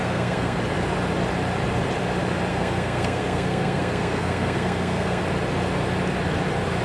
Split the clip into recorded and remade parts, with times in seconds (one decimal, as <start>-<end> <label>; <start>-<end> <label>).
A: 0.0-0.6 remade; 0.6-2.5 recorded; 2.5-5.2 remade; 5.2-6.8 recorded

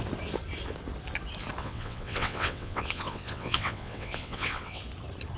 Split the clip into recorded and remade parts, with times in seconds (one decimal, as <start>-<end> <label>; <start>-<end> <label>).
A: 0.0-1.6 recorded; 1.6-4.8 remade; 4.8-5.4 recorded

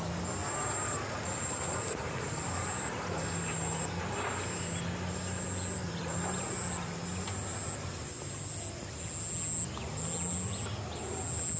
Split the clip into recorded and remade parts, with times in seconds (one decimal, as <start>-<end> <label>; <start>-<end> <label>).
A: 0.0-0.4 recorded; 0.4-4.0 remade; 4.0-5.8 recorded; 5.8-6.5 remade; 6.5-11.6 recorded

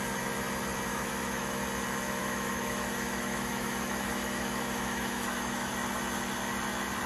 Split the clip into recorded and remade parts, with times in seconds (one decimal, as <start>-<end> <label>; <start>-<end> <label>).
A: 0.0-0.9 recorded; 0.9-1.6 remade; 1.6-2.2 recorded; 2.2-5.7 remade; 5.7-7.1 recorded

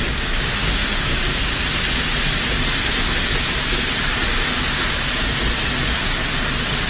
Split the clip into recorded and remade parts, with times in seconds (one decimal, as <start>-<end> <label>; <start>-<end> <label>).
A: 0.0-6.9 recorded

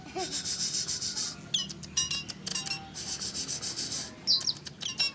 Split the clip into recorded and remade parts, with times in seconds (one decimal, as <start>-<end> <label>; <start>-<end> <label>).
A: 0.0-5.1 recorded